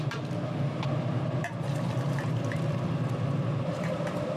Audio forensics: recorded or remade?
remade